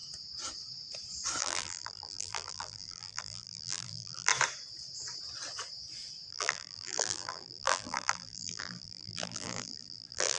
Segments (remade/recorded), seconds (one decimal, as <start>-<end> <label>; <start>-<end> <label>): 0.0-1.4 recorded; 1.4-4.3 remade; 4.3-6.3 recorded; 6.3-10.4 remade